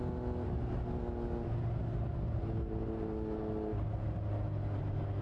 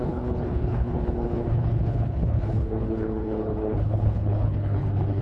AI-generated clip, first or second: second